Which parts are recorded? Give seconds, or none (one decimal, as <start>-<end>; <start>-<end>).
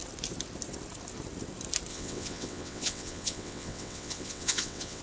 0.0-1.9